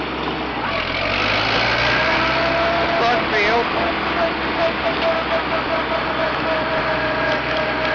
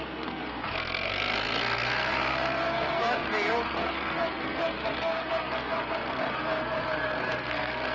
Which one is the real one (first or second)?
first